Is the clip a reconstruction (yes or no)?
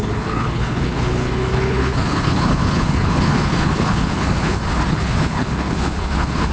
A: yes